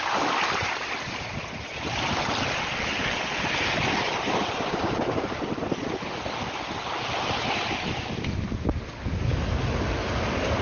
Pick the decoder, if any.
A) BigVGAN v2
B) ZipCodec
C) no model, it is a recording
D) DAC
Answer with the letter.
C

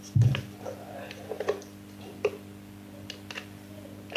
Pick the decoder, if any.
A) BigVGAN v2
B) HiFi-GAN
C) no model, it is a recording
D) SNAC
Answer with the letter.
C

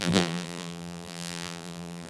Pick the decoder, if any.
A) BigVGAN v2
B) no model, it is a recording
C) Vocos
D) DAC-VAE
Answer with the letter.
A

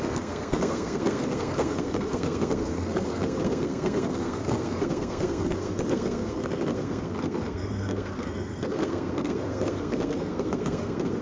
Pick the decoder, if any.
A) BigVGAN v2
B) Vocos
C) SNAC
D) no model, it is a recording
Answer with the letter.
C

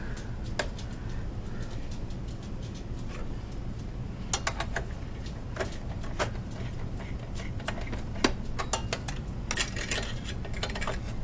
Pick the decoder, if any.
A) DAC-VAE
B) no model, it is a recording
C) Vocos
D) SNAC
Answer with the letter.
B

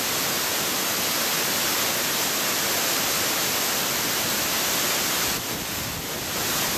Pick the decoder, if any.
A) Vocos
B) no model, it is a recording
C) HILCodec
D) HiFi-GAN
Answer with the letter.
B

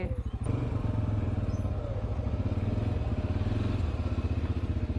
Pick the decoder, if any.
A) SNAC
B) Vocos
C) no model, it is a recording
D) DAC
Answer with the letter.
C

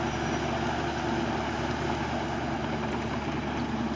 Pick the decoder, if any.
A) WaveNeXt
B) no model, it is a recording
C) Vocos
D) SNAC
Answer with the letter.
B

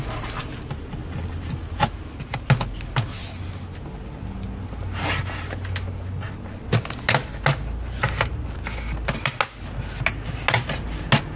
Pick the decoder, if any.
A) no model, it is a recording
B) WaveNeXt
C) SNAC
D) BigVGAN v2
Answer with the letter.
A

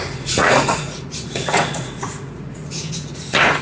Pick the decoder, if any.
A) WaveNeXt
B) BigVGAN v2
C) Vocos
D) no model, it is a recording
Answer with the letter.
C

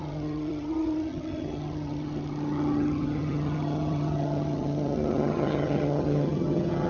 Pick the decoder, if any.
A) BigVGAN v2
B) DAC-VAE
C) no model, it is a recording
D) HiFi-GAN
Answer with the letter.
D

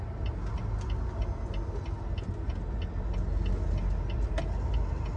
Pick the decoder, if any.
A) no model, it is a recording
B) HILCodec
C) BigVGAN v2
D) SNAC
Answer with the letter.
A